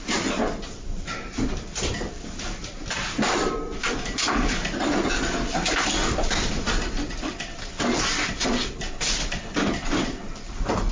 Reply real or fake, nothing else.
fake